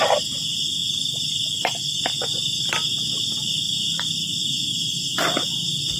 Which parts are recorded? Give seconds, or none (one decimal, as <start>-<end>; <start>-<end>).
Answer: 0.0-6.0